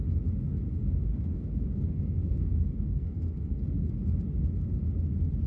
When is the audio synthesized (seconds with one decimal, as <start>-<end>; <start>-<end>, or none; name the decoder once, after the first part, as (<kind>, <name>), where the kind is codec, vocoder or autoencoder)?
1.1-3.9 (codec, SNAC)